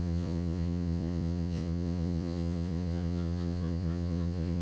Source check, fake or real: fake